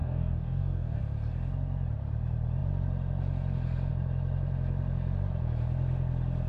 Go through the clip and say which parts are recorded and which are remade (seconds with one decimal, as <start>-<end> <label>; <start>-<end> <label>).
0.0-1.0 remade; 1.0-6.5 recorded